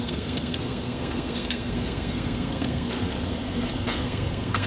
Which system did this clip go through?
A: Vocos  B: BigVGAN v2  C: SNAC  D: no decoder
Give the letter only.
C